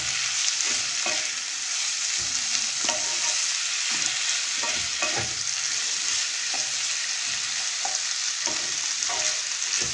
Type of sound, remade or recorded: recorded